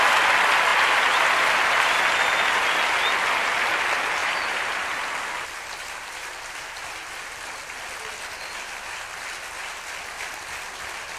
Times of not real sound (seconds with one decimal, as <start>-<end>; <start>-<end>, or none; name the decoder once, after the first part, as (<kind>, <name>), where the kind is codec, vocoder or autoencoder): 4.2-4.9 (vocoder, BigVGAN v2)